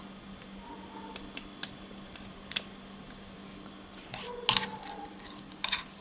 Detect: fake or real real